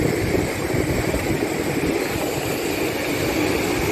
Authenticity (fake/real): real